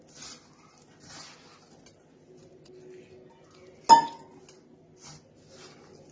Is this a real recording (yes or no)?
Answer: yes